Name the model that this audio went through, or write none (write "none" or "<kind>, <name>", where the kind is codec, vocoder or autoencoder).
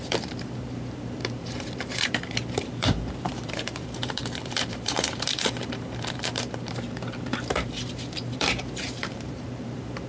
vocoder, BigVGAN v2